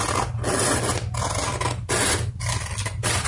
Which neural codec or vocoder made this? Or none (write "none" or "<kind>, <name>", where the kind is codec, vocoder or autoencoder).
none